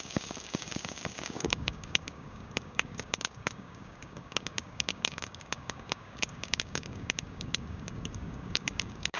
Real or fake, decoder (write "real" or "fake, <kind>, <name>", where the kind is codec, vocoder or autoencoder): fake, codec, DAC